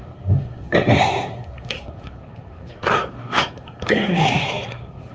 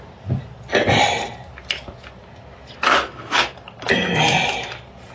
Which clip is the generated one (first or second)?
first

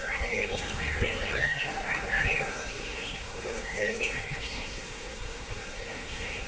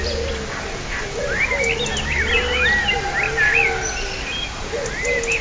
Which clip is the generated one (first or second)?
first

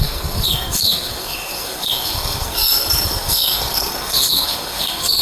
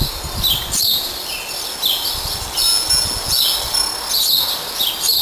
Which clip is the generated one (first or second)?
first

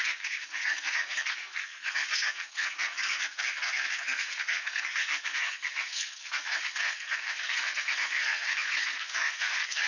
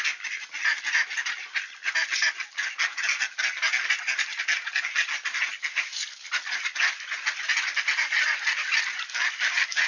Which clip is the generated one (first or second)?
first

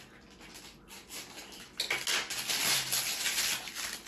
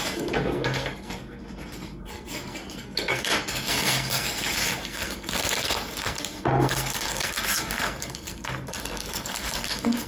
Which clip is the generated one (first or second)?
second